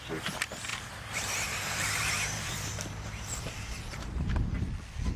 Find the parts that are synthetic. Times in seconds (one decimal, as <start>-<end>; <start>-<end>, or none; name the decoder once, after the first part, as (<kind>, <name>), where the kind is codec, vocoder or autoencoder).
0.7-3.8 (vocoder, BigVGAN v2)